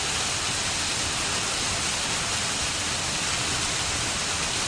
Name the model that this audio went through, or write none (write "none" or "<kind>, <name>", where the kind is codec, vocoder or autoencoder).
none